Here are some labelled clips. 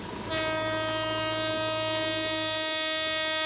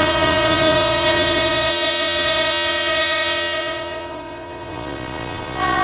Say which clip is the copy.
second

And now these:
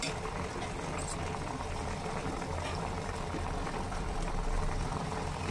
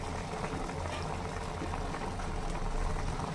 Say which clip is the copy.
first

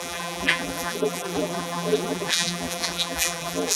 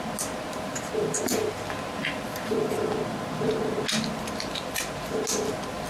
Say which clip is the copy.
first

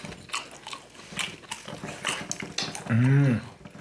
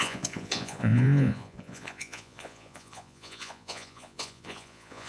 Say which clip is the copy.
second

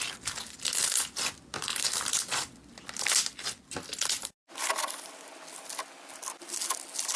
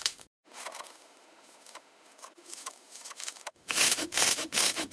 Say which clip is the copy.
second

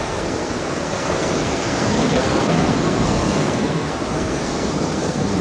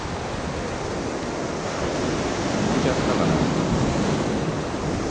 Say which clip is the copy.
first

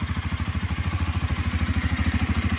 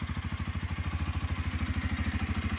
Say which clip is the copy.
first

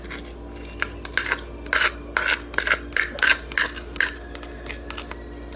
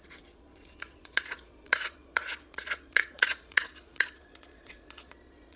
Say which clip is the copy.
second